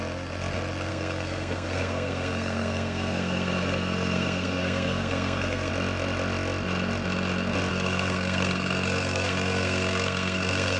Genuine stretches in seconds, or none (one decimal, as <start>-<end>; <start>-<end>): 0.0-0.9; 5.7-7.7